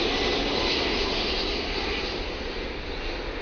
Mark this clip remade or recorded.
recorded